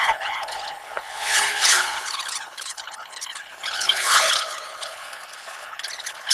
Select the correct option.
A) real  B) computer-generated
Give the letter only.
B